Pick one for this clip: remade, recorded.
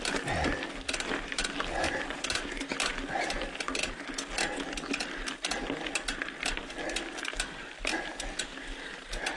recorded